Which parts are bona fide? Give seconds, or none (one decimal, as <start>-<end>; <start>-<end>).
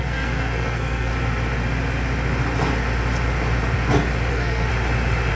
1.1-4.3; 4.7-5.3